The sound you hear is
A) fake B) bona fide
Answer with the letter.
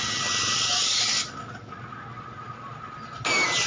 B